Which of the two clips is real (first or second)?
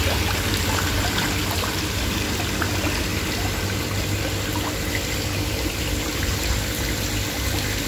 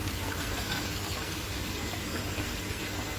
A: first